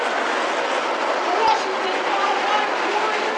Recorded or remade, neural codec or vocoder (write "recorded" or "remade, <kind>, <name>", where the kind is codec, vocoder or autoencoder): recorded